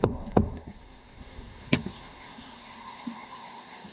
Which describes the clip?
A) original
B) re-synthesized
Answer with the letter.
B